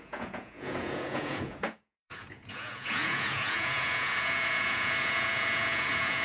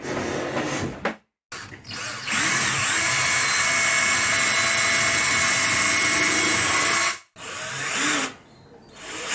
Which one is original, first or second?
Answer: second